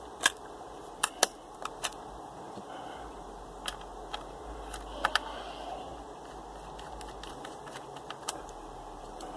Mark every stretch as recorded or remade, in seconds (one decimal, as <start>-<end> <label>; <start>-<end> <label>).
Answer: 0.0-5.9 remade; 5.9-7.3 recorded; 7.3-9.4 remade